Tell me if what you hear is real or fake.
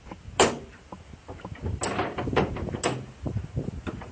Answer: real